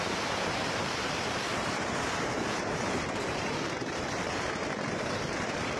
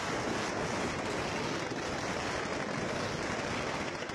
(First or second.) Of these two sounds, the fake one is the first